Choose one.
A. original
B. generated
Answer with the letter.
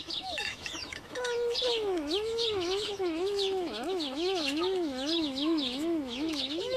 B